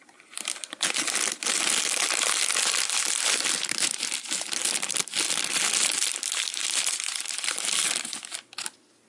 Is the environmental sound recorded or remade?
recorded